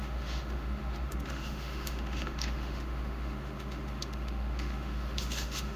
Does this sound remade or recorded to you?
remade